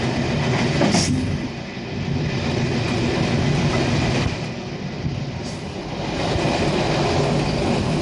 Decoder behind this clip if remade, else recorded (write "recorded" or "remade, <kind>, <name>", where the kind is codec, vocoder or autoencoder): recorded